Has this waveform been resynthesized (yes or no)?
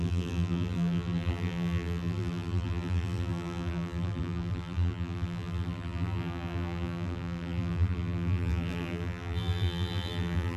yes